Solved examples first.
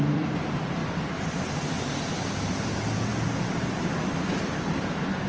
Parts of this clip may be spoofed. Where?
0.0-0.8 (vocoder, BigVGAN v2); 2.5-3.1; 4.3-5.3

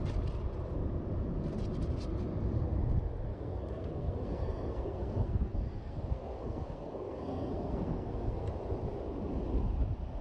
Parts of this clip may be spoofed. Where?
3.3-8.5 (codec, SNAC)

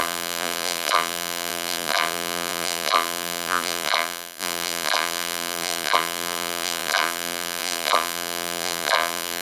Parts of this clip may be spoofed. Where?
0.0-9.4 (vocoder, BigVGAN v2)

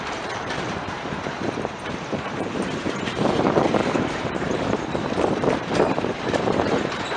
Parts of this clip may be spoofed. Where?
0.0-7.2 (vocoder, BigVGAN v2)

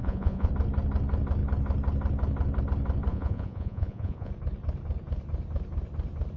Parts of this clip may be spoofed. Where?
0.0-0.5 (vocoder, Vocos); 3.1-4.3

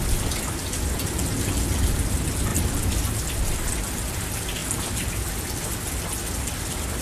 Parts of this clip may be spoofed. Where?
none

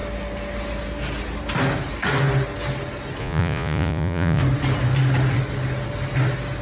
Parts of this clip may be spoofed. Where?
3.2-4.4 (vocoder, Vocos)